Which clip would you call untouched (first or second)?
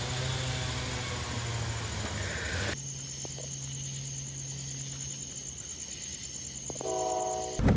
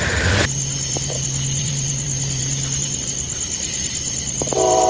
first